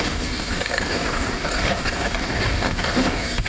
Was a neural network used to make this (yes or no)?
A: yes